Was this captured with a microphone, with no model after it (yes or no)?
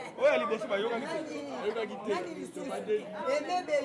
yes